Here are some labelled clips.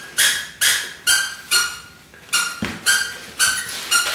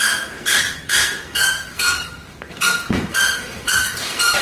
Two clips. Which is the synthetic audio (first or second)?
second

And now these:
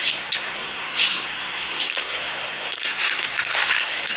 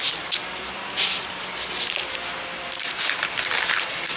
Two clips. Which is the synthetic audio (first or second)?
first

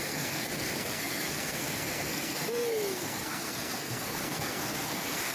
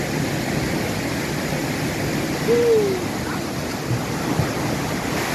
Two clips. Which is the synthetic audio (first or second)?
first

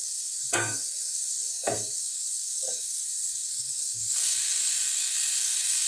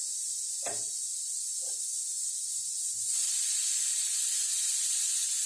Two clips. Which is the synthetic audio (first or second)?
first